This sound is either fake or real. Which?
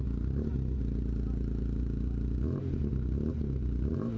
real